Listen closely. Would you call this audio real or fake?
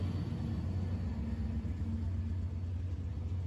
real